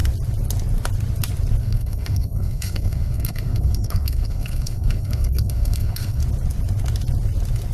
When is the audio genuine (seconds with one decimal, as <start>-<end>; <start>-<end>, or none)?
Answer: 0.0-1.6; 6.2-7.7